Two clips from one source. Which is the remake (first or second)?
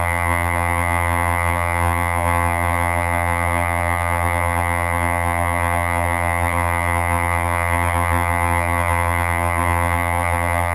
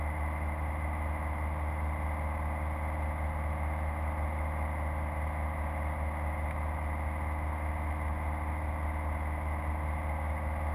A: first